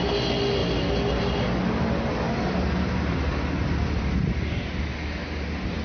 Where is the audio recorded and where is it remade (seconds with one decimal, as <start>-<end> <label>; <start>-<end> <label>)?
0.0-5.8 recorded